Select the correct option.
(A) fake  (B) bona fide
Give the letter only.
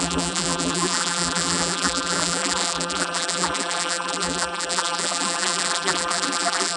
A